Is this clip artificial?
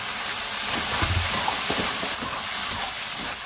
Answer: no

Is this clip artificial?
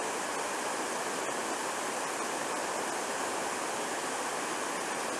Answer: no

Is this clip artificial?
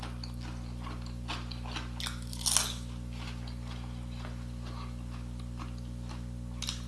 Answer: no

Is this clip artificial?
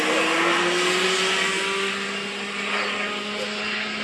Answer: no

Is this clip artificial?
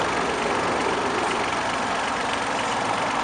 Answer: no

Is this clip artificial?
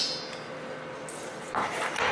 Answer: no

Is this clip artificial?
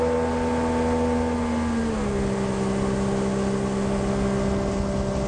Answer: no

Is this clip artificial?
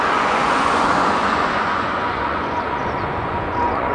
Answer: yes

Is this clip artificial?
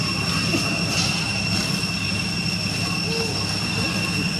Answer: no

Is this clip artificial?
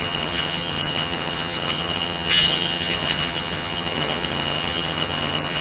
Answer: yes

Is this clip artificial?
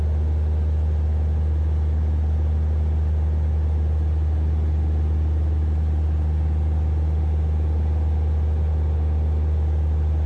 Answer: no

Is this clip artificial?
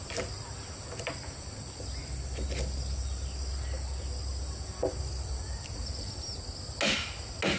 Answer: no